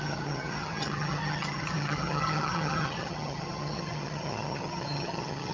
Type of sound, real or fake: fake